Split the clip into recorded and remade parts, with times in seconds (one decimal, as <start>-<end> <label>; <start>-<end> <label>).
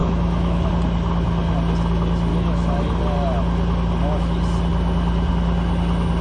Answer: 0.0-0.7 remade; 0.7-2.3 recorded; 2.3-3.0 remade; 3.0-6.2 recorded